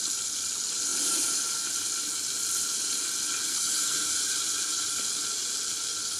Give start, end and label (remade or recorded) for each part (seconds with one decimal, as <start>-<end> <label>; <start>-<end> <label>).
0.0-3.5 recorded; 3.5-4.2 remade; 4.2-6.2 recorded